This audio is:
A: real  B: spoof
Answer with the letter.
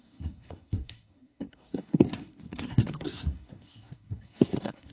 B